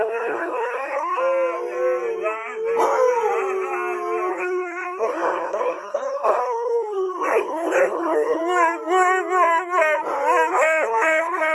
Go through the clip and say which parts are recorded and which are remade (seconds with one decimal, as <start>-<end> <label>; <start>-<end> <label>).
0.0-1.2 remade; 1.2-4.3 recorded; 4.3-8.4 remade; 8.4-10.5 recorded; 10.5-11.5 remade